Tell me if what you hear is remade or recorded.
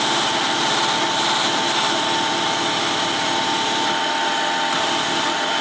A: recorded